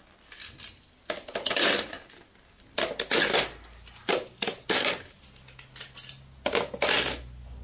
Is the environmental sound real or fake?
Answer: real